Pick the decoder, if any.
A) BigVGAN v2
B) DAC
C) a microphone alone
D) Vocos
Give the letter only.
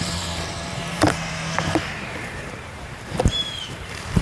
A